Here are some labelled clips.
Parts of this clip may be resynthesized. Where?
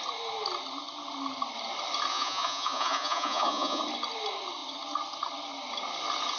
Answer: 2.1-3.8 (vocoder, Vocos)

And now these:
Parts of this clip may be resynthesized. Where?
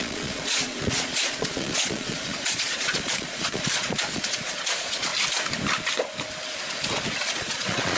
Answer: 0.0-5.1 (vocoder, Vocos); 7.3-8.0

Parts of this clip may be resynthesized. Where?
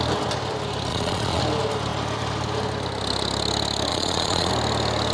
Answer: 0.9-1.4 (vocoder, Vocos); 3.9-4.5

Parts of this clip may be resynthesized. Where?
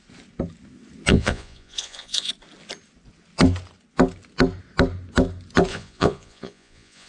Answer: 1.1-2.3 (vocoder, Vocos); 5.7-7.1